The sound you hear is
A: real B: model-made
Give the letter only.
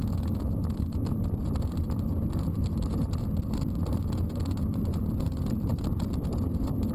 A